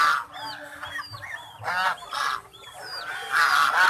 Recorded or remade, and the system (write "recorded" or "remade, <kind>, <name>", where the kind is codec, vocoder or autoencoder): recorded